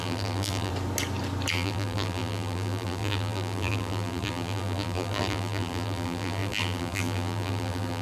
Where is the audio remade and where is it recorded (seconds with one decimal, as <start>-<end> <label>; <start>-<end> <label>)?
0.0-0.7 remade; 0.7-1.5 recorded; 1.5-8.0 remade